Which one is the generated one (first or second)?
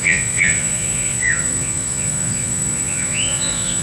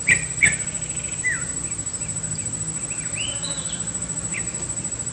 first